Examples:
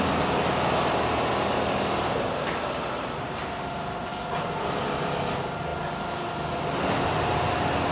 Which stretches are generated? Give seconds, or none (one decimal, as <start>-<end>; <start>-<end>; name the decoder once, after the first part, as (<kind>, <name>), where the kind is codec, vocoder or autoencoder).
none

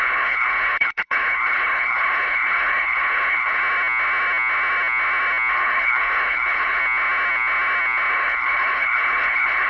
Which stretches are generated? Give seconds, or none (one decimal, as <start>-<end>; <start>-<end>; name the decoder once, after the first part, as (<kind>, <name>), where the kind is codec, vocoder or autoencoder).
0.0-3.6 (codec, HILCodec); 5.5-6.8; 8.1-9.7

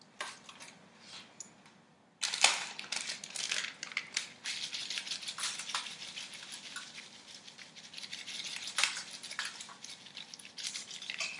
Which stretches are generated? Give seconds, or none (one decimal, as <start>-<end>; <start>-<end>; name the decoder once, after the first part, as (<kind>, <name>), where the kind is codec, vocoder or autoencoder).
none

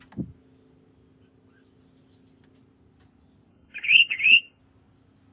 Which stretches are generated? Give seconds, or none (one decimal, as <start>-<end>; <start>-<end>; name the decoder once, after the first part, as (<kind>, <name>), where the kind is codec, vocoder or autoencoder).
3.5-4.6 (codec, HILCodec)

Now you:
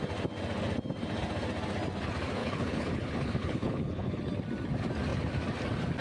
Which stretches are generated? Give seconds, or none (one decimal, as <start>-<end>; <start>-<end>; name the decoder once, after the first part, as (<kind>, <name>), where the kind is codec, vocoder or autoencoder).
2.4-4.2 (codec, HILCodec)